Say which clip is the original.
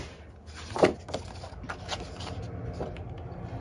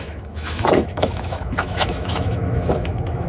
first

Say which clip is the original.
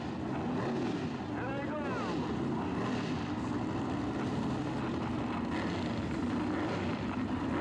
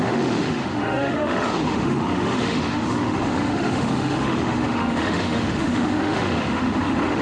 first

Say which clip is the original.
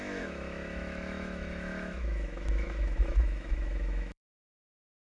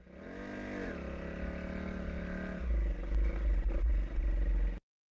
second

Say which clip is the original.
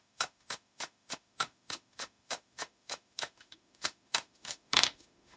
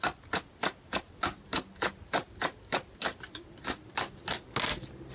second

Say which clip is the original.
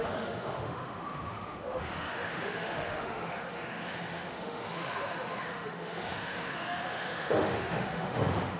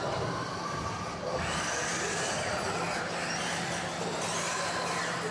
second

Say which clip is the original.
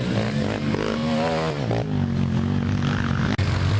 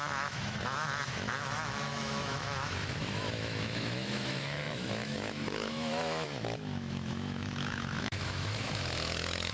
first